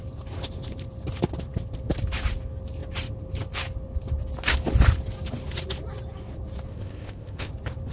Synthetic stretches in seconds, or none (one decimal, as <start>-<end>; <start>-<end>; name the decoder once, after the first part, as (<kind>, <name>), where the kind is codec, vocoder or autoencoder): 6.7-7.5 (codec, ZipCodec)